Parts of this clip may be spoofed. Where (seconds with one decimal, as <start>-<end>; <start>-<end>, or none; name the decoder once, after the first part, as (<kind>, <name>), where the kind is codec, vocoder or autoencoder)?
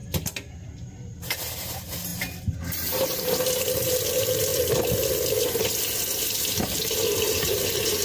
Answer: 0.5-4.5 (vocoder, BigVGAN v2); 6.3-8.0